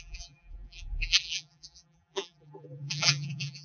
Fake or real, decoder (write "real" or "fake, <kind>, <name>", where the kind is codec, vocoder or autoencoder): fake, vocoder, BigVGAN v2